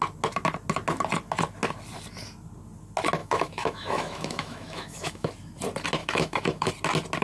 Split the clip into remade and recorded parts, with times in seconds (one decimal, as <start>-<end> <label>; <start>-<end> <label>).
0.0-3.2 recorded; 3.2-5.3 remade; 5.3-6.0 recorded; 6.0-6.7 remade; 6.7-7.2 recorded